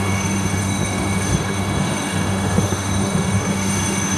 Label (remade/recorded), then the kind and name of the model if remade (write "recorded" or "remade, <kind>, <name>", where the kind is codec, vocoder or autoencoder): remade, autoencoder, DAC-VAE